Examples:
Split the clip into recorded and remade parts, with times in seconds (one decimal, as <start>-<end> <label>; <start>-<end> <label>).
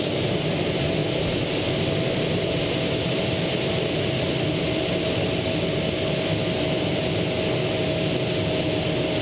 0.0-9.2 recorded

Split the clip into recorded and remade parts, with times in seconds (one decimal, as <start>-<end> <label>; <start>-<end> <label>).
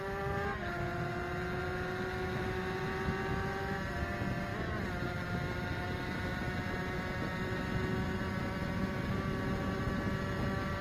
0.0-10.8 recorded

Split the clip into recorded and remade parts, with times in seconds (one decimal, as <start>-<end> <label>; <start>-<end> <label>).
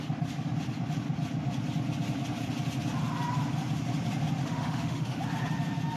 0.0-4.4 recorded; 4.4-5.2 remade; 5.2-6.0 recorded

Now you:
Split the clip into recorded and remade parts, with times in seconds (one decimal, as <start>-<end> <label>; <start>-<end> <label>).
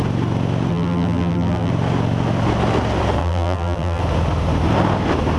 0.0-0.7 recorded; 0.7-1.7 remade; 1.7-3.2 recorded; 3.2-4.0 remade; 4.0-5.4 recorded